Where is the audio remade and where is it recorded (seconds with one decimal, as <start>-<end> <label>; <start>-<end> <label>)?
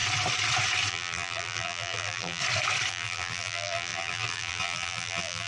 0.0-0.9 recorded; 0.9-2.4 remade; 2.4-2.9 recorded; 2.9-5.5 remade